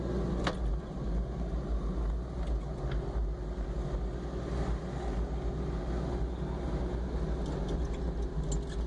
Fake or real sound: real